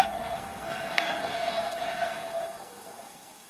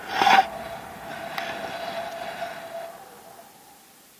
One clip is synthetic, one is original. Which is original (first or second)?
second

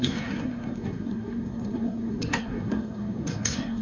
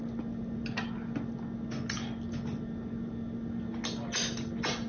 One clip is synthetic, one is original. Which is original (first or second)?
second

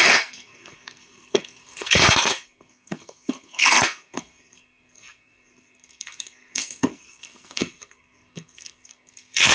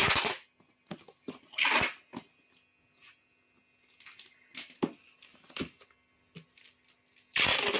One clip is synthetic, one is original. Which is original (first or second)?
second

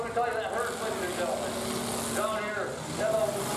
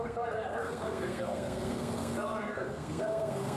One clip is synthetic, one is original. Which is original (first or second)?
first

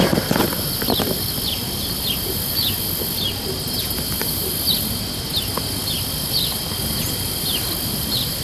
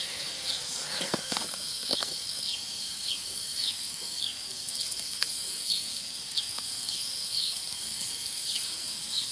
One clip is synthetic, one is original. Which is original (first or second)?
first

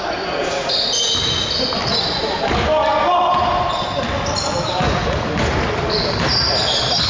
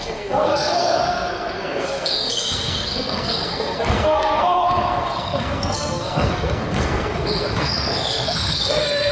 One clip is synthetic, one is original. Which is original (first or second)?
first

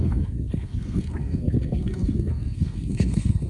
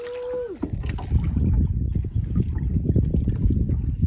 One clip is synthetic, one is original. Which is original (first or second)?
second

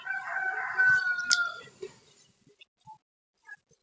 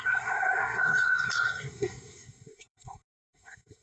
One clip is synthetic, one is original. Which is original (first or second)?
first